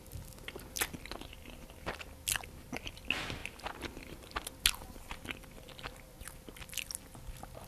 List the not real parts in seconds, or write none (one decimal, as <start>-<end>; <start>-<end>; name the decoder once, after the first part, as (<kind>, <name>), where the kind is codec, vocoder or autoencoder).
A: none